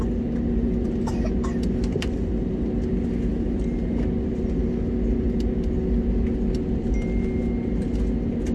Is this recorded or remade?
recorded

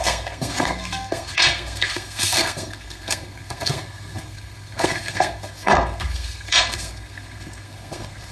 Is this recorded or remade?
remade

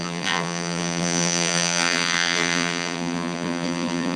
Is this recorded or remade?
remade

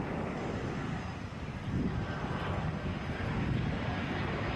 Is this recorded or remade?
recorded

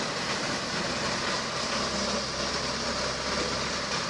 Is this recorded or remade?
recorded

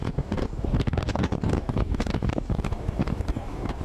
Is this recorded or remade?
remade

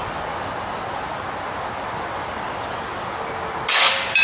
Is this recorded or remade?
recorded